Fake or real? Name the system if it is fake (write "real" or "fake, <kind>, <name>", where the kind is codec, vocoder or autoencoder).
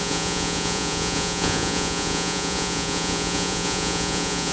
fake, vocoder, Vocos